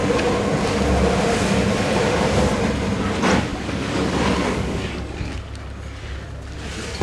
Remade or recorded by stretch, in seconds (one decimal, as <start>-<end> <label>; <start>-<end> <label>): 0.0-3.5 recorded; 3.5-5.3 remade; 5.3-7.0 recorded